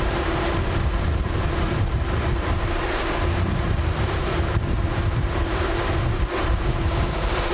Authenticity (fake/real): fake